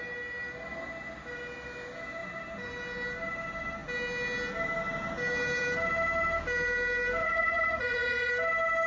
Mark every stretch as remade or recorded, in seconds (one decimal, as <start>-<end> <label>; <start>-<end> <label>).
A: 0.0-7.2 recorded; 7.2-8.3 remade; 8.3-8.9 recorded